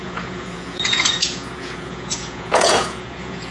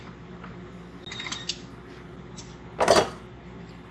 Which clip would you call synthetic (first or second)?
first